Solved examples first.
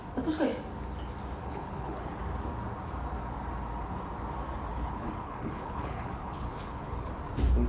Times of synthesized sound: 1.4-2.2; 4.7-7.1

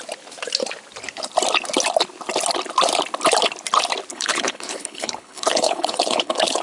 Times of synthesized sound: 4.1-6.6